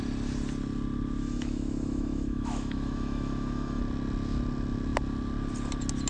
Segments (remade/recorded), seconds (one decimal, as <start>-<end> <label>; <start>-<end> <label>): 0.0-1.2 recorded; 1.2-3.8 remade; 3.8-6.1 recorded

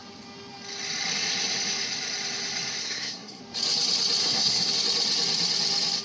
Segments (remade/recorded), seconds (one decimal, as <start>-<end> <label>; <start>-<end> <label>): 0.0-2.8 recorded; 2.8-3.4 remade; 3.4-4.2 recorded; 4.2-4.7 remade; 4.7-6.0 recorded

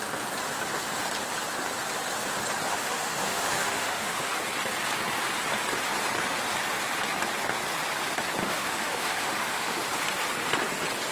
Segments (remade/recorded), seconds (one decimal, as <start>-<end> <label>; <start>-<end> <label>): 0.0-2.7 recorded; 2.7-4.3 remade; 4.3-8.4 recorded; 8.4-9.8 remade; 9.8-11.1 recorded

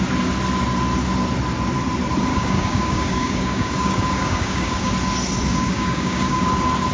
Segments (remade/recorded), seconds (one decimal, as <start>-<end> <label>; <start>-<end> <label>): 0.0-2.3 recorded; 2.3-4.9 remade; 4.9-5.5 recorded; 5.5-6.5 remade; 6.5-6.9 recorded

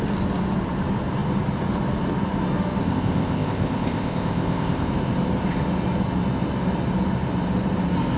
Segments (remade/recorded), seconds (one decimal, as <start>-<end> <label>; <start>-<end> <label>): 0.0-2.8 recorded; 2.8-4.9 remade; 4.9-8.2 recorded

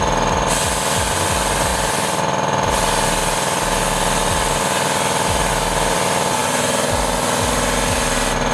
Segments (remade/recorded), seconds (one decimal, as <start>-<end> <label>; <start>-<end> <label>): 0.0-8.5 recorded

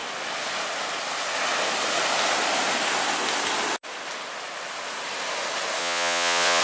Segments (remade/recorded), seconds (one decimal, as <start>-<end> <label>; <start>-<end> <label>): 0.0-5.8 recorded; 5.8-6.6 remade

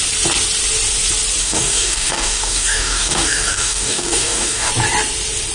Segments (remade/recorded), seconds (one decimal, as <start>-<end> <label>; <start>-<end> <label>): 0.0-1.4 recorded; 1.4-4.7 remade; 4.7-5.5 recorded